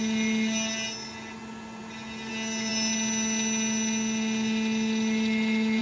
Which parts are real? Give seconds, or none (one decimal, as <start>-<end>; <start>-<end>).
0.0-5.8